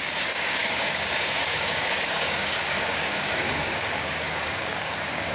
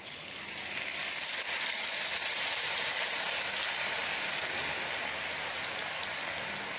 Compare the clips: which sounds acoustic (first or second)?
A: second